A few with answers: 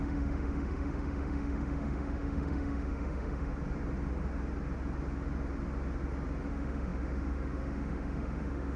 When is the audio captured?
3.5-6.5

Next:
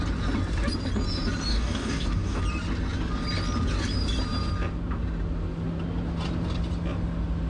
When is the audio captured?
0.0-1.5; 2.4-7.5

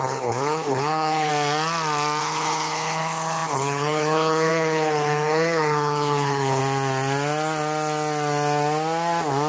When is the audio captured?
1.3-2.2; 6.6-9.5

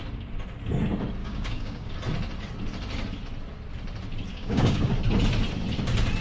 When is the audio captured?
0.0-1.2; 1.9-4.3; 4.9-6.2

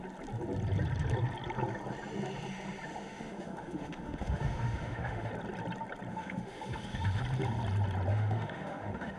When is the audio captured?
0.0-2.9; 5.3-6.1; 7.2-8.1

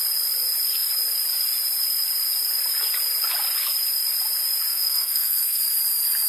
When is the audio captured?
0.0-4.7; 5.6-6.3

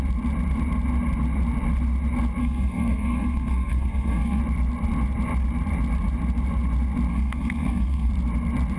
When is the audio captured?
0.0-2.4; 4.4-7.1; 8.1-8.8